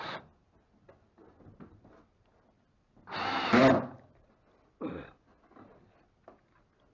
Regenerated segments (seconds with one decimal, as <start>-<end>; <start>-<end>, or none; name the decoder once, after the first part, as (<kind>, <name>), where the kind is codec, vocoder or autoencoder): none